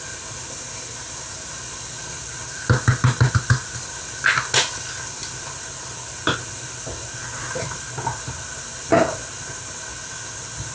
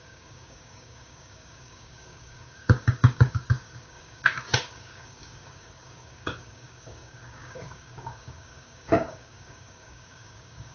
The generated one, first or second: second